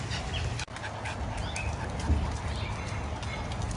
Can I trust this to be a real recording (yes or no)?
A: yes